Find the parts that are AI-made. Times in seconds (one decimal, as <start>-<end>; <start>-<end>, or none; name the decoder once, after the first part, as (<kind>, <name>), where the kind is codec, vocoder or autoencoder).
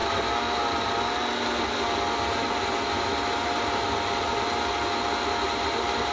none